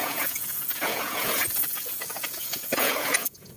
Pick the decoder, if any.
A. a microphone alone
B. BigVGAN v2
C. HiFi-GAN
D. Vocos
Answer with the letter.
D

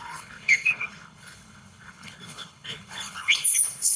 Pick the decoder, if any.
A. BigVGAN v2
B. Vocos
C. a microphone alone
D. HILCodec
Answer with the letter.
D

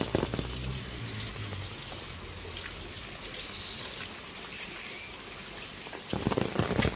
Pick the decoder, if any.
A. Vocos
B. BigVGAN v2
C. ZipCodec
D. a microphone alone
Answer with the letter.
D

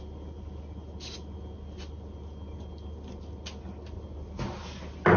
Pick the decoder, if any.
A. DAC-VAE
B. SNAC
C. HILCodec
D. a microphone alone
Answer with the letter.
D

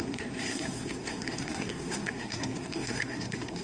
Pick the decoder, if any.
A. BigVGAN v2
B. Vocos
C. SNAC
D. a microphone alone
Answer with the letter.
C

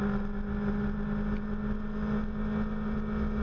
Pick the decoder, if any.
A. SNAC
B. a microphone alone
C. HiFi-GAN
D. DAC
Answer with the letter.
B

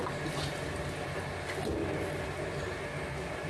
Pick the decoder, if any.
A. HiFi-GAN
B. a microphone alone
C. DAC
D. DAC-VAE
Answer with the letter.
B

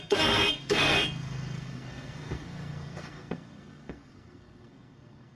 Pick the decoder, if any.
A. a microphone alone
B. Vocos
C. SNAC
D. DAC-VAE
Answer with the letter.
C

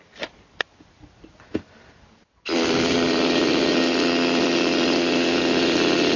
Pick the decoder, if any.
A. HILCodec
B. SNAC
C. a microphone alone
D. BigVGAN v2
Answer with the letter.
C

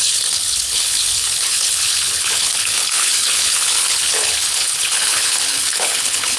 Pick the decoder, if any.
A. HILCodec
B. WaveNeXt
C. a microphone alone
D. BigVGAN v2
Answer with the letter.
A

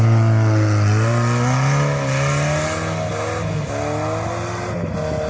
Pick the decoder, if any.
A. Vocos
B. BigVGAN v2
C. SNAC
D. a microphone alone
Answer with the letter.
D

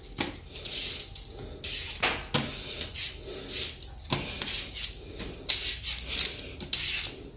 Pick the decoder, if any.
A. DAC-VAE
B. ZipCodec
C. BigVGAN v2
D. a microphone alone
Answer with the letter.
D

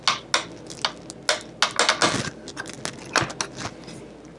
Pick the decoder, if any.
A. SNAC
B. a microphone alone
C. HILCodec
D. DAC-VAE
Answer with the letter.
B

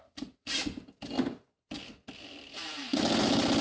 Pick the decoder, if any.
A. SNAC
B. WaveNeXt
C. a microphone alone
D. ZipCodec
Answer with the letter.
C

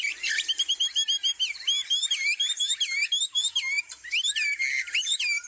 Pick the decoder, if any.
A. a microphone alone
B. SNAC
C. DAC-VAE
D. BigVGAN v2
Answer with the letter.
A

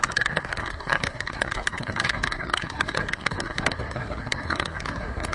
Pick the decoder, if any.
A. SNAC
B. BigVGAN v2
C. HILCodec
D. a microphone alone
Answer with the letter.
A